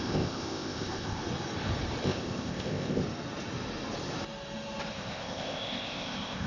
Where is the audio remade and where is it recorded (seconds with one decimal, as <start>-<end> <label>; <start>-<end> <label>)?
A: 0.0-1.2 remade; 1.2-2.0 recorded; 2.0-3.0 remade; 3.0-4.9 recorded; 4.9-6.5 remade